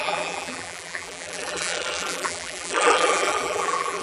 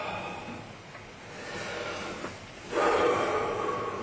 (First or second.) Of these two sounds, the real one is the second